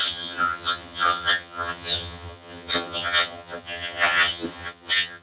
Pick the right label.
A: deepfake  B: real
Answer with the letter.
A